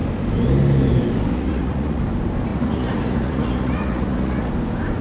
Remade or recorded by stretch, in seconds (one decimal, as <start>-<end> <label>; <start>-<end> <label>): 0.0-1.3 recorded; 1.3-2.0 remade; 2.0-2.5 recorded; 2.5-4.5 remade; 4.5-5.0 recorded

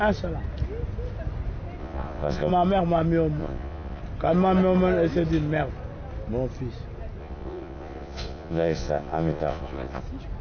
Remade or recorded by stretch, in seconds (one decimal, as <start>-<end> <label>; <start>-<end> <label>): 0.0-1.8 recorded; 1.8-2.5 remade; 2.5-3.4 recorded; 3.4-4.0 remade; 4.0-7.2 recorded; 7.2-10.0 remade; 10.0-10.4 recorded

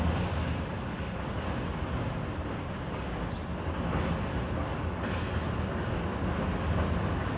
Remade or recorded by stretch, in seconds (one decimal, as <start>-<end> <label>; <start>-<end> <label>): 0.0-7.4 recorded

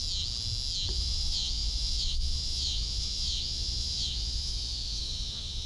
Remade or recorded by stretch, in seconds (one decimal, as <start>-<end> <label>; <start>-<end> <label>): 0.0-0.9 recorded; 0.9-5.7 remade

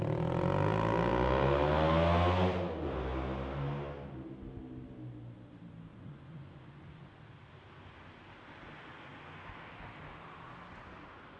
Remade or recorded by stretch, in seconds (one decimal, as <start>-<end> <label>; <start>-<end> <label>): 0.0-5.9 recorded; 5.9-7.2 remade; 7.2-11.4 recorded